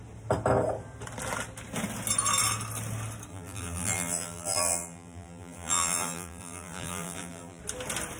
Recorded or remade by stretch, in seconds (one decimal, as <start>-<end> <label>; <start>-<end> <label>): 0.0-3.3 recorded; 3.3-7.6 remade; 7.6-8.2 recorded

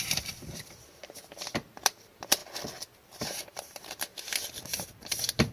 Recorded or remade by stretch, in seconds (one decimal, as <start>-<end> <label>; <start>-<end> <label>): 0.0-2.4 remade; 2.4-3.0 recorded; 3.0-4.1 remade; 4.1-4.6 recorded; 4.6-5.5 remade

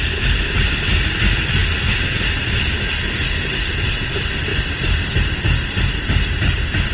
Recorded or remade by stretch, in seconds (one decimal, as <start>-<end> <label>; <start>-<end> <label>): 0.0-1.6 recorded; 1.6-3.2 remade; 3.2-4.5 recorded; 4.5-5.2 remade; 5.2-6.9 recorded

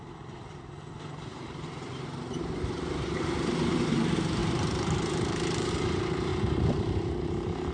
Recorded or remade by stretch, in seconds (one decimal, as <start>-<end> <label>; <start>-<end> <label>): 0.0-7.7 remade

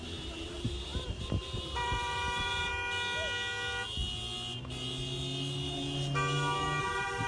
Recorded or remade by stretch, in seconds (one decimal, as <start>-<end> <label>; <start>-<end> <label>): 0.0-2.7 remade; 2.7-6.8 recorded; 6.8-7.3 remade